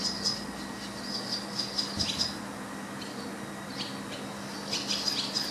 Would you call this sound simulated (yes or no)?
no